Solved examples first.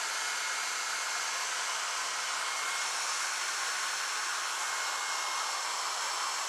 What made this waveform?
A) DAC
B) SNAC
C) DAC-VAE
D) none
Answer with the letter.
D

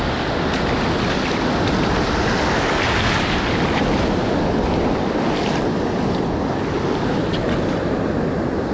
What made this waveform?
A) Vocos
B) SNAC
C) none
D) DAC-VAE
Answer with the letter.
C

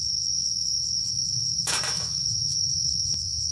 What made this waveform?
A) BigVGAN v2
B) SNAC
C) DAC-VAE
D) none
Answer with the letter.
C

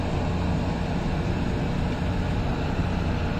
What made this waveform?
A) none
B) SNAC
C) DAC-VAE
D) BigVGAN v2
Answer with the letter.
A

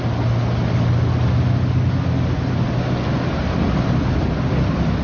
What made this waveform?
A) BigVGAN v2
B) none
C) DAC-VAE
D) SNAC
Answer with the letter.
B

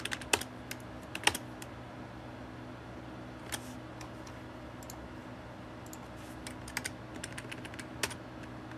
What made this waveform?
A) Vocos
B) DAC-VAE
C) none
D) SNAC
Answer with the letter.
C